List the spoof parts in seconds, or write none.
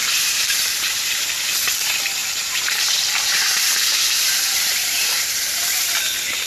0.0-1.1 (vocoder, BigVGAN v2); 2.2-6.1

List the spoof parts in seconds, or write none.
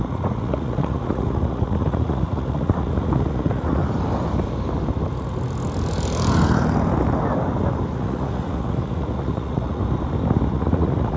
0.0-3.8 (vocoder, Vocos); 7.9-9.8; 10.5-11.2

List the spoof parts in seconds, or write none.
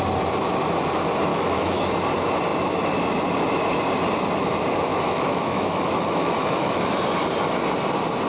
1.3-1.9 (autoencoder, DAC-VAE); 4.9-7.0